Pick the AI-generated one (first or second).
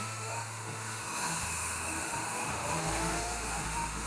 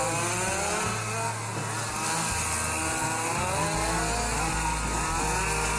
first